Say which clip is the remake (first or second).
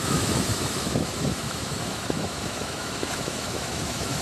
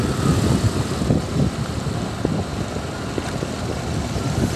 first